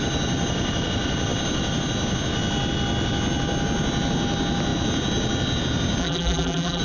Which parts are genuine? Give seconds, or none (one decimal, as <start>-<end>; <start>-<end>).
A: 0.0-6.0